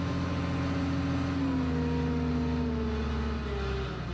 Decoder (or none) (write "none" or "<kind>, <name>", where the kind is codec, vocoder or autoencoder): none